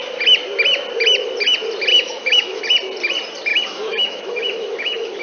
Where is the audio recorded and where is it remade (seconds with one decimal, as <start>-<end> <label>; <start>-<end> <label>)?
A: 0.0-1.9 recorded; 1.9-2.6 remade; 2.6-3.5 recorded; 3.5-5.2 remade